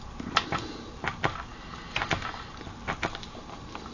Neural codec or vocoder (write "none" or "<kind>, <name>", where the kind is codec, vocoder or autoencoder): none